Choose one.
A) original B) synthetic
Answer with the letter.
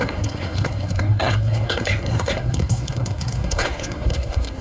B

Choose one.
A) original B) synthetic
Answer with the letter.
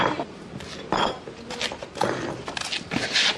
A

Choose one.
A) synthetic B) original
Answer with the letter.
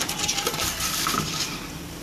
B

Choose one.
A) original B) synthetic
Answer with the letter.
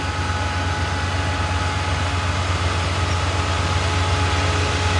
A